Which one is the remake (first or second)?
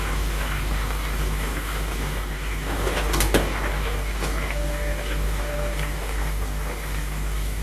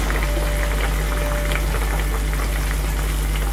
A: first